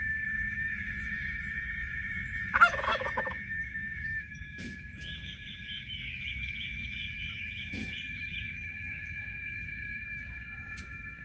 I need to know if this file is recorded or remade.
remade